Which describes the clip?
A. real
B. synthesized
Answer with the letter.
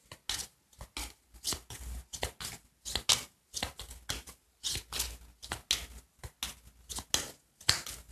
A